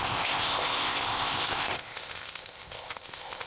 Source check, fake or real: fake